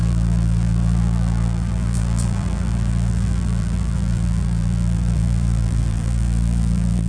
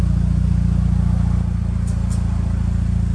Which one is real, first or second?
second